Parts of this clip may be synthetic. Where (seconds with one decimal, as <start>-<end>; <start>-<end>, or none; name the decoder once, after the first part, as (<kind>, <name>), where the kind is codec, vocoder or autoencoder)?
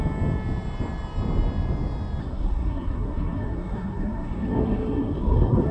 2.2-5.7 (codec, SNAC)